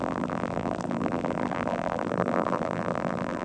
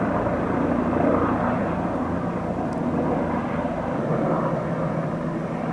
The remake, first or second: first